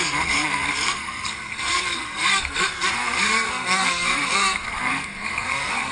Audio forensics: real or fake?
fake